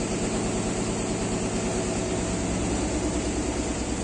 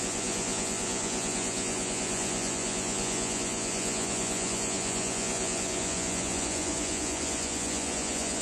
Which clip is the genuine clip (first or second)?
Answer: first